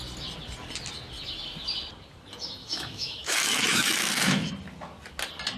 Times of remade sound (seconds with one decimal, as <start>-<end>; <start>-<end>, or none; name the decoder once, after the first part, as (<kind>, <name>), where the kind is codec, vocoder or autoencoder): 2.6-4.5 (autoencoder, DAC-VAE)